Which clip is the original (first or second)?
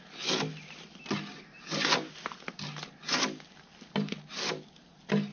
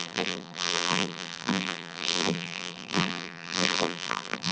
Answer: first